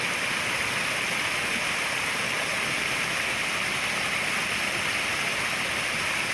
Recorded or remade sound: recorded